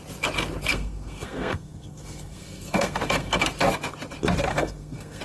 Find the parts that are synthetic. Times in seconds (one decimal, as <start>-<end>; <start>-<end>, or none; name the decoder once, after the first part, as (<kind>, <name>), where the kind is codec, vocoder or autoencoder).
0.7-3.4 (codec, SNAC); 4.5-5.2